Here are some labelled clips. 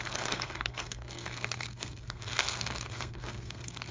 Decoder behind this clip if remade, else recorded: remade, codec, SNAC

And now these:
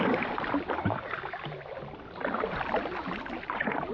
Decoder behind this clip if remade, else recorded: recorded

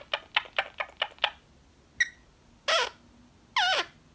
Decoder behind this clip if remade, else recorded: recorded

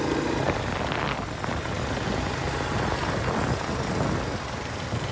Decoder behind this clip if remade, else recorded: recorded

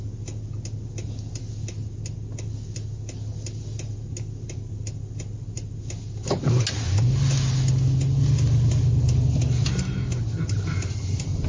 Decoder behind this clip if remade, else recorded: recorded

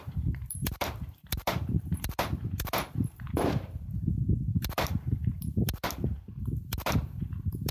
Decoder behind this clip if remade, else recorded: remade, vocoder, BigVGAN v2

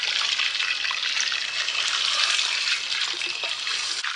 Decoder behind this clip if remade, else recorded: recorded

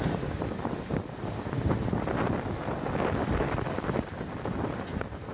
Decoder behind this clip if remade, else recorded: recorded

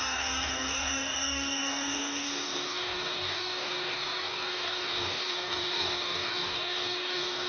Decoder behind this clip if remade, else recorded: remade, codec, DAC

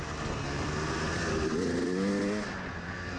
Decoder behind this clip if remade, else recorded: recorded